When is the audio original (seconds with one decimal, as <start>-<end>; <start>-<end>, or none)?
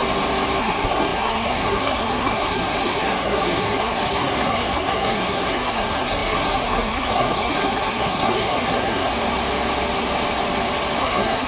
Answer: 0.0-0.6; 9.1-11.0